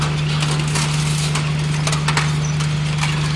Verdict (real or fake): real